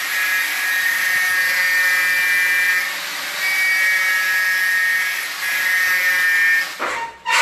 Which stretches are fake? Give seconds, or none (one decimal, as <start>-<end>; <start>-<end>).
none